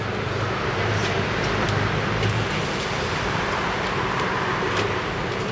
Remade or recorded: remade